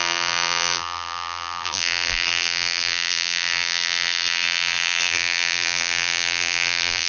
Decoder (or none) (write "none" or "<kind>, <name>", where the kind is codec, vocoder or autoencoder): vocoder, BigVGAN v2